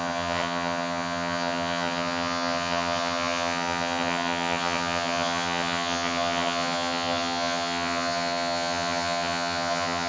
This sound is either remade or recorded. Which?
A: remade